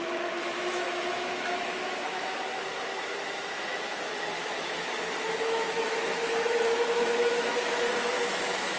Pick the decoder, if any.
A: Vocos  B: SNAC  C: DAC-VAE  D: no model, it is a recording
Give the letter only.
C